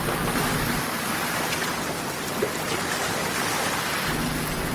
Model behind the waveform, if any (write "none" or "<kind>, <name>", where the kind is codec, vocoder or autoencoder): none